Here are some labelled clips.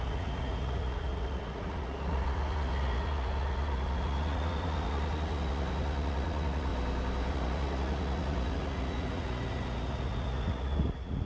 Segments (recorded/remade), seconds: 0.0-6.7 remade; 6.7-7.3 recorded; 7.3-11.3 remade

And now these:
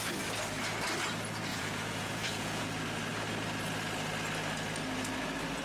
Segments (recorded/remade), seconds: 0.0-1.5 recorded; 1.5-2.6 remade; 2.6-5.6 recorded

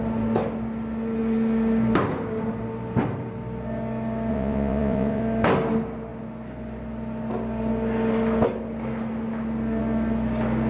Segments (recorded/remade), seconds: 0.0-4.3 recorded; 4.3-5.2 remade; 5.2-10.7 recorded

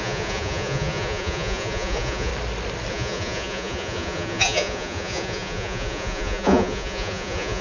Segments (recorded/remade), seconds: 0.0-2.3 remade; 2.3-2.9 recorded; 2.9-7.6 remade

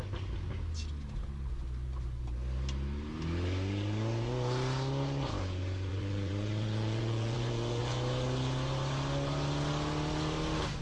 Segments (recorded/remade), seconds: 0.0-5.9 recorded; 5.9-7.8 remade; 7.8-10.8 recorded